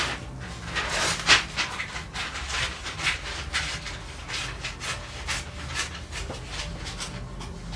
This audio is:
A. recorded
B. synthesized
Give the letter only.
A